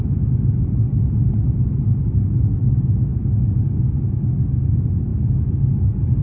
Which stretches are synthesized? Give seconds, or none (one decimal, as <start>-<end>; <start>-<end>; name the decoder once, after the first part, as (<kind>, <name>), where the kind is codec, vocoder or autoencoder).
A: none